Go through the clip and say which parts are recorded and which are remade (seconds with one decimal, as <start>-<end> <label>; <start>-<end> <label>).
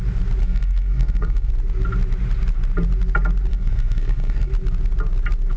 0.0-0.4 recorded; 0.4-1.5 remade; 1.5-3.5 recorded; 3.5-4.5 remade; 4.5-5.6 recorded